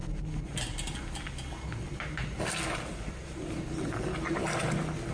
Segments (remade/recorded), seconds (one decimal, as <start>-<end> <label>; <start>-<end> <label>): 0.0-5.1 recorded